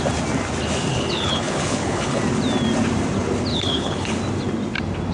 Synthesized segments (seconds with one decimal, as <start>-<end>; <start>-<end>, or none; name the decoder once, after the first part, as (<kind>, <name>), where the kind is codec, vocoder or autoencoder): 0.9-2.2 (codec, HILCodec); 3.5-4.2